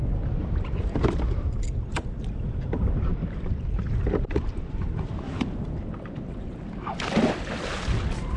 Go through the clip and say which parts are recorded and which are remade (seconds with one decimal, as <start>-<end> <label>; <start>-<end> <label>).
0.0-1.9 recorded; 1.9-8.4 remade